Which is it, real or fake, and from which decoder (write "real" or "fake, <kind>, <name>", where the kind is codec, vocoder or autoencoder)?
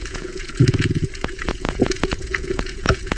fake, vocoder, Vocos